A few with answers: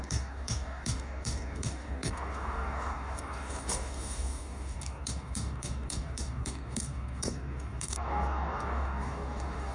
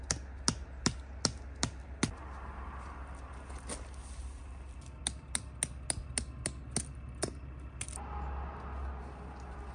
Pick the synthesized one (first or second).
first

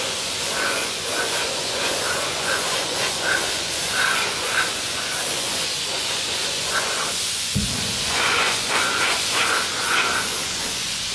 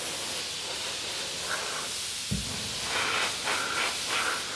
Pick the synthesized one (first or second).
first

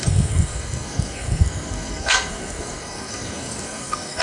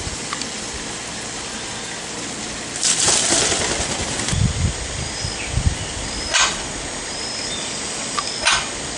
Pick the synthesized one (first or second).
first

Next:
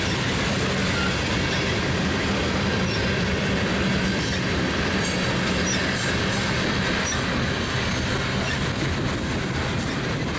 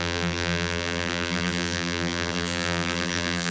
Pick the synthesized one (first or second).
second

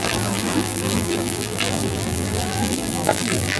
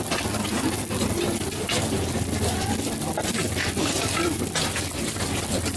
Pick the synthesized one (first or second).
first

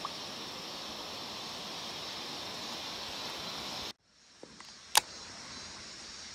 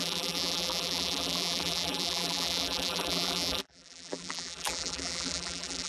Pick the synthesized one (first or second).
second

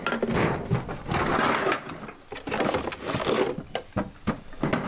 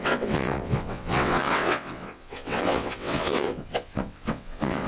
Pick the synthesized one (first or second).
second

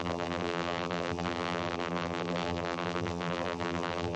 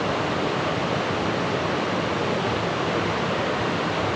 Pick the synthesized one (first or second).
first